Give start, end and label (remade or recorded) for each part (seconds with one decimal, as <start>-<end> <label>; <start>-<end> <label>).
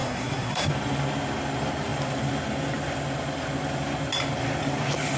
0.0-0.7 remade; 0.7-5.2 recorded